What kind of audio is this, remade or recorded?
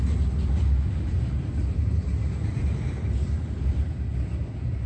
recorded